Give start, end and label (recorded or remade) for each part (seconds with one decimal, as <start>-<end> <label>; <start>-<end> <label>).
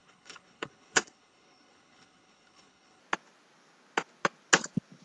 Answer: 0.0-3.0 remade; 3.0-5.0 recorded